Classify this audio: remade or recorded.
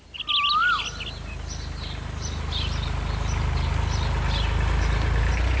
recorded